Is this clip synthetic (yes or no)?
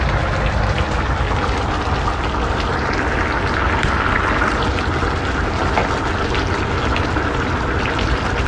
no